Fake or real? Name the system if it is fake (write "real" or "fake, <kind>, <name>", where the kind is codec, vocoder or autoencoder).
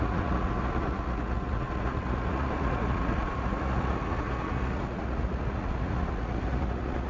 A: fake, vocoder, Vocos